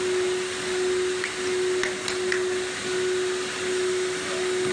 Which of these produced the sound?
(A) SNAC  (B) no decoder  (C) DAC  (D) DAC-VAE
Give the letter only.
B